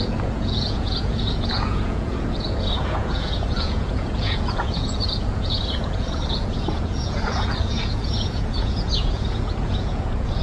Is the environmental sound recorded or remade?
remade